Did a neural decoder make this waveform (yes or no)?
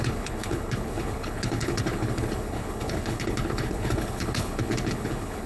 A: yes